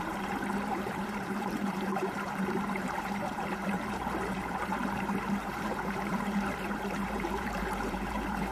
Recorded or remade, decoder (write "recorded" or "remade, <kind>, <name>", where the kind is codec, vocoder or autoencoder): remade, vocoder, BigVGAN v2